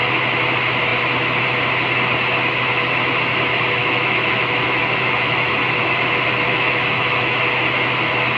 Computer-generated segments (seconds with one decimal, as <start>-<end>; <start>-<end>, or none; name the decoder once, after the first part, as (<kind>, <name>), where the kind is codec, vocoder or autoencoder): 3.8-5.9 (autoencoder, DAC-VAE); 6.5-7.4